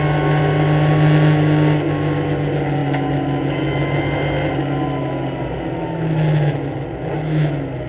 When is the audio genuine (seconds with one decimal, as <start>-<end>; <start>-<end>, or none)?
0.0-7.9

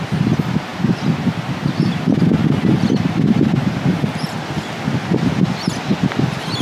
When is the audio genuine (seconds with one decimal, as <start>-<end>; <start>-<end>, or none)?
0.0-6.6

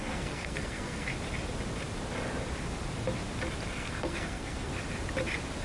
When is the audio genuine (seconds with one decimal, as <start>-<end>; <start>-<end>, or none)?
1.1-3.7; 4.7-5.6

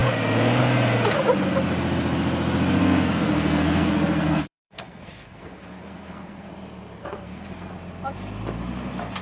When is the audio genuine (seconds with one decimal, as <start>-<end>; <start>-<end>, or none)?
0.0-2.8; 6.5-7.0; 7.7-9.2

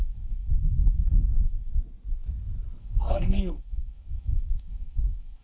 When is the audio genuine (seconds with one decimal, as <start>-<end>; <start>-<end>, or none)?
1.7-2.8

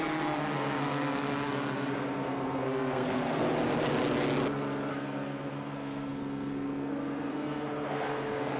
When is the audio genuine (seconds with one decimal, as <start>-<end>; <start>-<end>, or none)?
3.4-4.9

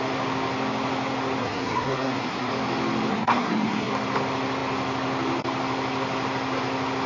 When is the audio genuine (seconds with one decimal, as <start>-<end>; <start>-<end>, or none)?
0.0-1.4; 2.5-3.1; 3.9-7.1

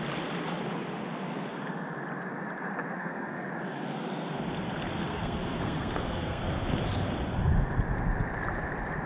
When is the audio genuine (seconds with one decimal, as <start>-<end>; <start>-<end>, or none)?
0.0-3.0; 3.5-5.0; 6.4-9.1